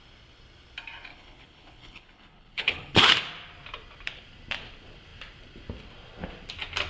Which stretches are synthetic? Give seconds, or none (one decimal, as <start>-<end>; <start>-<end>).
1.1-3.1